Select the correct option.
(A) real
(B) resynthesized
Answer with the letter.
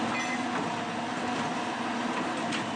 A